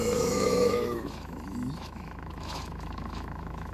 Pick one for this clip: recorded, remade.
remade